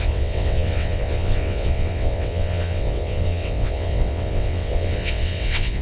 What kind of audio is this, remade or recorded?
remade